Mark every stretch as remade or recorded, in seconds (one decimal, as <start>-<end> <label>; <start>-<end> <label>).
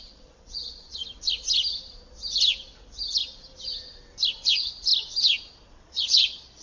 0.0-1.0 remade; 1.0-4.5 recorded; 4.5-4.9 remade; 4.9-5.7 recorded; 5.7-6.6 remade